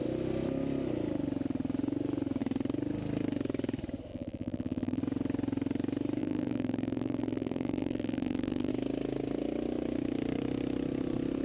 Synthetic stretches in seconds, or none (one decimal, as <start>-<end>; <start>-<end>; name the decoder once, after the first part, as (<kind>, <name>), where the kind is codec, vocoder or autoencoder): 4.1-5.0 (vocoder, BigVGAN v2); 6.2-8.7